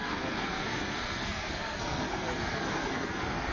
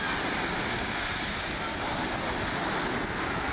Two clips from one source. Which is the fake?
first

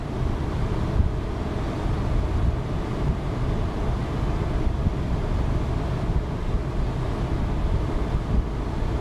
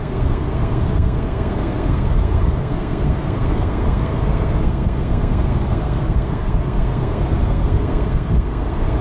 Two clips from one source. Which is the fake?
second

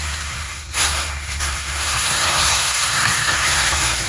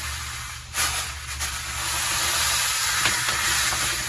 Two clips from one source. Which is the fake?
first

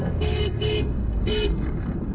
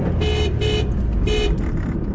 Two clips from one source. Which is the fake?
first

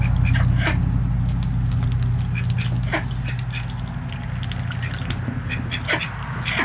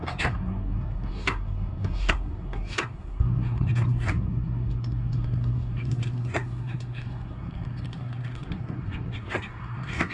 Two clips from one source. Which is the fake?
second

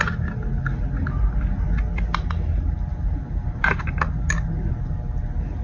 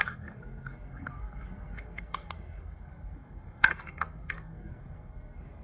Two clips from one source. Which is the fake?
second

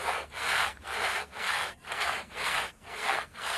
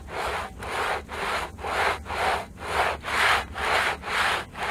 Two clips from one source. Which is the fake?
first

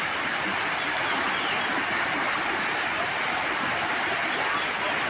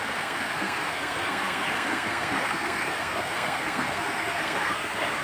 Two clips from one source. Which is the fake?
second